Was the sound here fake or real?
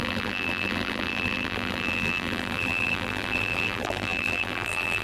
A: fake